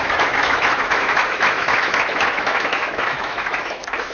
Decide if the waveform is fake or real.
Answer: fake